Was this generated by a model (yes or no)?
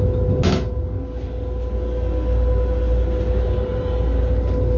no